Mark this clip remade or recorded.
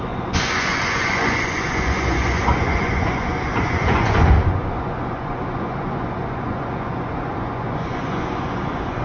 remade